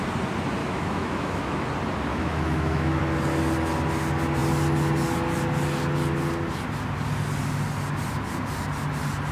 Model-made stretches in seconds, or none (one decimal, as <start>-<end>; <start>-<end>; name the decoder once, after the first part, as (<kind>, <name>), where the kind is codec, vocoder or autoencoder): 0.6-1.7 (autoencoder, DAC-VAE); 2.1-3.0